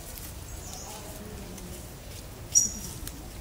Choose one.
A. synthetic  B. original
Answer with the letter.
B